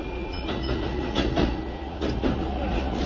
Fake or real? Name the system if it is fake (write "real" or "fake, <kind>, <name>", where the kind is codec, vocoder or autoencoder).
fake, vocoder, Vocos